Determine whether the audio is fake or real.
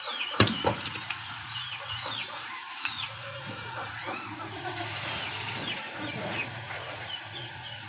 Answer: fake